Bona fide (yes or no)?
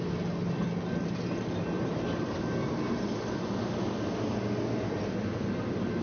yes